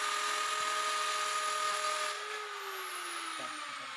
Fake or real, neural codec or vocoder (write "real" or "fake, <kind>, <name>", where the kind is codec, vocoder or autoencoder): real